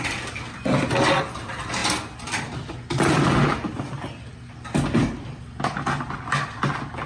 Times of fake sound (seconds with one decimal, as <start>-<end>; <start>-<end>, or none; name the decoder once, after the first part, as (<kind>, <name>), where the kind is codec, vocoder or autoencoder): none